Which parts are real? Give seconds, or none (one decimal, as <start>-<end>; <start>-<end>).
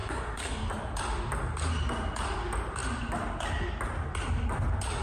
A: 0.7-5.0